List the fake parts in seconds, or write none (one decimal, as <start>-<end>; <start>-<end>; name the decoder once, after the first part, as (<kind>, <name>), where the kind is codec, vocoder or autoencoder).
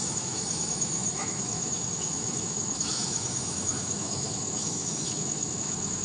0.0-6.0 (autoencoder, DAC-VAE)